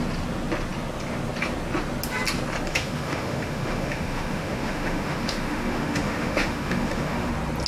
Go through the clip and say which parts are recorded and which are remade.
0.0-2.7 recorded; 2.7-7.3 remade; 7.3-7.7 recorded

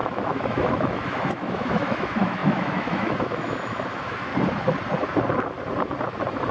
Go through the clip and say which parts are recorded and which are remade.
0.0-4.3 remade; 4.3-6.5 recorded

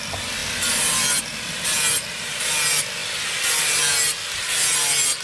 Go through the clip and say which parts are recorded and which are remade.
0.0-5.2 recorded

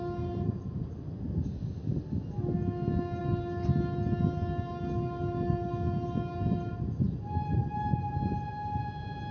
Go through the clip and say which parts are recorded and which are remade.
0.0-9.3 recorded

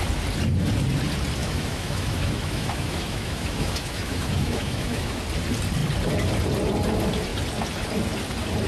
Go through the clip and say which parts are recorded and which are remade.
0.0-1.4 recorded; 1.4-5.2 remade; 5.2-8.7 recorded

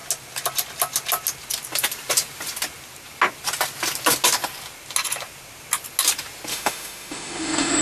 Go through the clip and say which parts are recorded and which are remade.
0.0-6.5 recorded; 6.5-7.8 remade

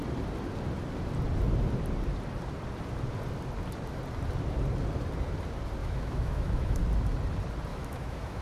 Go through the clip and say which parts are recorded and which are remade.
0.0-5.8 recorded; 5.8-6.8 remade; 6.8-7.7 recorded; 7.7-8.4 remade

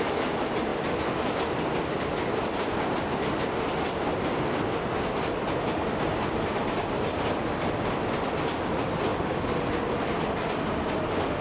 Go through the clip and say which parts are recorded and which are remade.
0.0-11.4 recorded